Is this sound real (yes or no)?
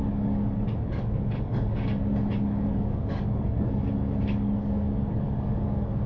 no